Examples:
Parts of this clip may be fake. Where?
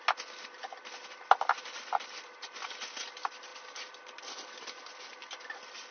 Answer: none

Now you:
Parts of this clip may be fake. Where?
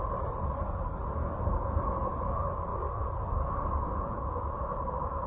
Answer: none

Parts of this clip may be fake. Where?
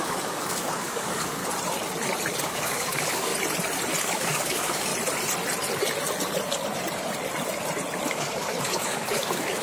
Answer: 0.0-1.4 (codec, DAC); 2.4-3.3; 4.0-4.9; 8.1-9.6